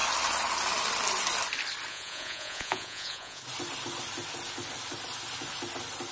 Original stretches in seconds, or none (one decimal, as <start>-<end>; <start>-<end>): 0.0-1.9; 3.4-6.1

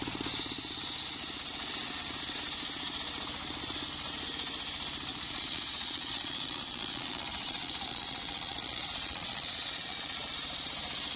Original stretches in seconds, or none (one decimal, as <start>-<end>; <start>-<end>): 0.0-5.1; 10.3-11.2